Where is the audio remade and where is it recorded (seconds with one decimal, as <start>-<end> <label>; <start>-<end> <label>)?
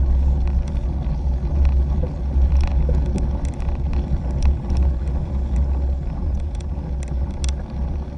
0.0-6.2 recorded; 6.2-6.7 remade; 6.7-8.2 recorded